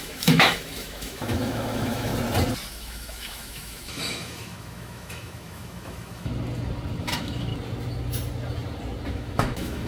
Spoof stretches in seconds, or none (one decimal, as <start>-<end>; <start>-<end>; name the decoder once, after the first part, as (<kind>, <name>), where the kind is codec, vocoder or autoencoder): 0.0-2.1 (autoencoder, DAC-VAE); 2.7-6.3; 7.0-7.5; 9.1-9.9